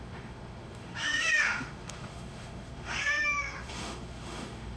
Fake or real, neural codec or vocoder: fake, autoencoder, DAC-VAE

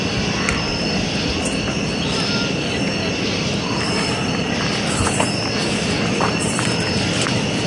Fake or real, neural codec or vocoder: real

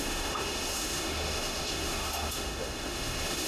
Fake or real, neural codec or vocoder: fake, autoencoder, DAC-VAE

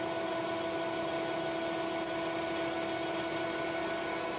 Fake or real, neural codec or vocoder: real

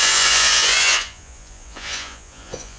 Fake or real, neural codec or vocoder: fake, vocoder, Vocos